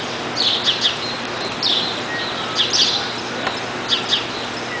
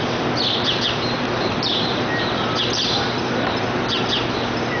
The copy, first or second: second